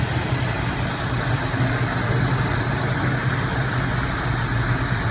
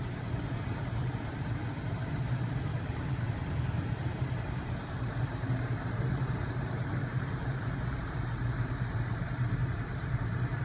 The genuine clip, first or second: first